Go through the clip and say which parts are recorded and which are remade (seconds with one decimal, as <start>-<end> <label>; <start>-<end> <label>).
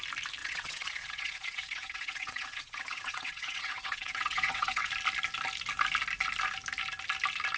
0.0-0.4 recorded; 0.4-4.9 remade; 4.9-7.6 recorded